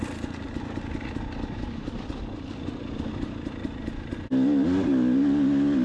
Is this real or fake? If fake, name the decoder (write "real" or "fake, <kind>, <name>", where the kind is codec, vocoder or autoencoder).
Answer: real